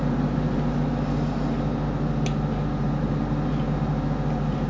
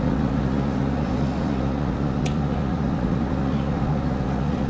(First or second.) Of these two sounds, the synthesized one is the second